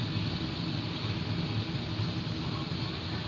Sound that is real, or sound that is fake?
real